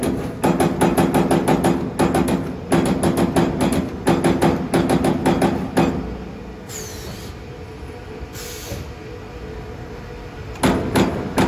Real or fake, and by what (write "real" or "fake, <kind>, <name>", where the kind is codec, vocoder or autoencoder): real